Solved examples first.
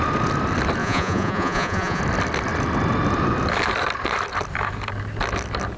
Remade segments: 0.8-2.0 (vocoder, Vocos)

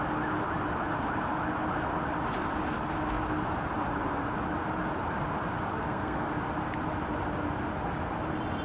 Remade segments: 5.7-6.3 (codec, SNAC)

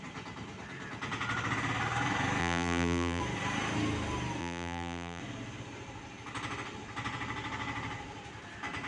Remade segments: 2.4-3.2 (vocoder, BigVGAN v2); 4.4-5.2

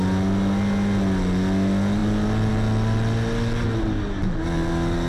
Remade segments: none

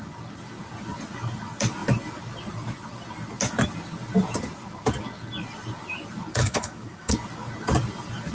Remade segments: 6.4-7.1 (autoencoder, DAC-VAE)

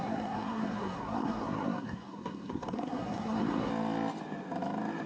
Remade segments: 0.0-3.7 (codec, SNAC)